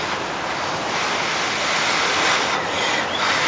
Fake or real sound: real